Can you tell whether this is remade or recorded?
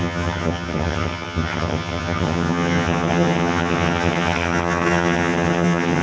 remade